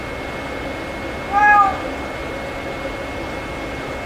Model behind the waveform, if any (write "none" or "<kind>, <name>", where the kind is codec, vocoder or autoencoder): none